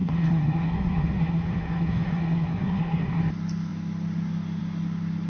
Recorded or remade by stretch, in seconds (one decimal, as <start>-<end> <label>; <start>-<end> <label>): 0.0-3.2 remade; 3.2-5.3 recorded